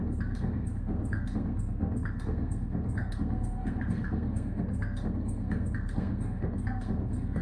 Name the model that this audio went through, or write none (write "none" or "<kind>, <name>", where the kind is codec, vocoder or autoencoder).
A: codec, SNAC